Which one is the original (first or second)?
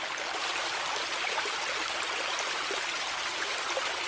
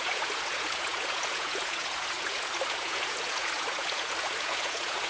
first